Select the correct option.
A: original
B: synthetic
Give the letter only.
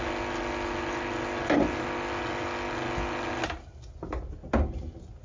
A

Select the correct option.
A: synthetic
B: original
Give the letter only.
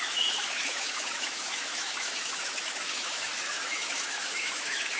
A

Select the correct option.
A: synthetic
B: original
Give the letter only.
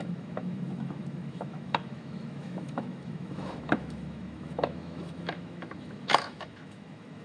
A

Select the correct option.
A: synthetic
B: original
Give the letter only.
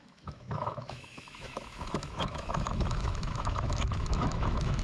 A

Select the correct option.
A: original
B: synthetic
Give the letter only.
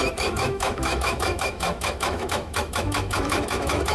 B